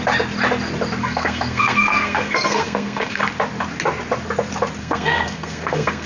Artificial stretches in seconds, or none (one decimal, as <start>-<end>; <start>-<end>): 1.0-3.2; 4.8-6.1